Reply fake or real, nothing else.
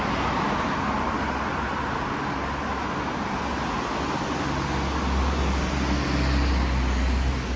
real